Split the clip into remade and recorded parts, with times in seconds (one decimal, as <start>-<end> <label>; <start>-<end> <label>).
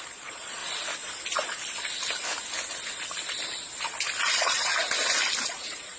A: 0.0-0.6 remade; 0.6-4.2 recorded; 4.2-4.7 remade; 4.7-5.5 recorded; 5.5-6.0 remade